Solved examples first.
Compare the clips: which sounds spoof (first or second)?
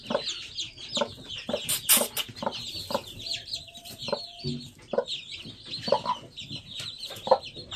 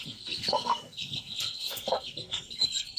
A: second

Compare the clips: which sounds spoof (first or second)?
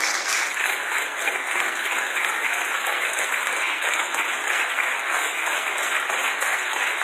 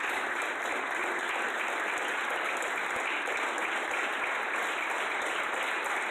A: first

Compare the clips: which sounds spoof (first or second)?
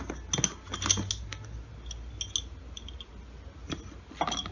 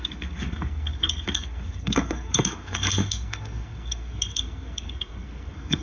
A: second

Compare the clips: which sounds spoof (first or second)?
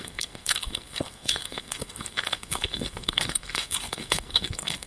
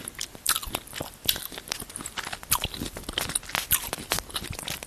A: first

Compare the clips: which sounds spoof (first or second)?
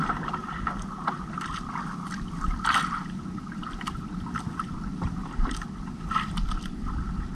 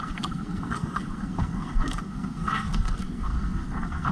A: second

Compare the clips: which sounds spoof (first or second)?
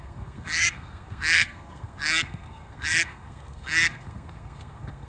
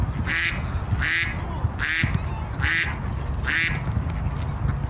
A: first